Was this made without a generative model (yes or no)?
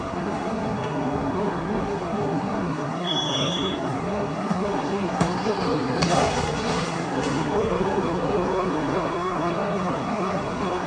no